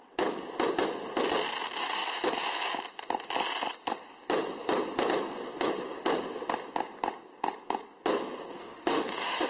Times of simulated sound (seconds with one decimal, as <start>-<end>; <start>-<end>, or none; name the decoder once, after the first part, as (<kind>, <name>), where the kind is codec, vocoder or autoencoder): 8.6-9.5 (autoencoder, DAC-VAE)